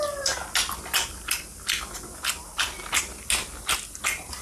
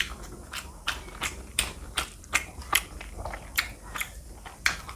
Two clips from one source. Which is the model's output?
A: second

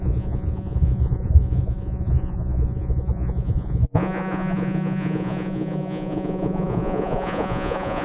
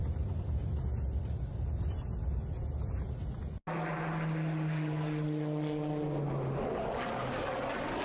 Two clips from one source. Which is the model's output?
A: first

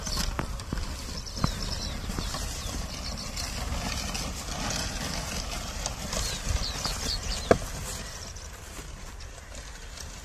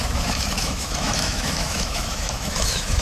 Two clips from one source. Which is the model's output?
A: second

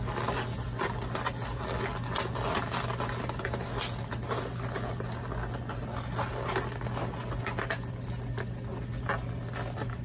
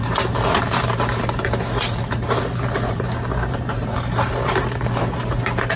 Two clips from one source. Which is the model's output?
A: second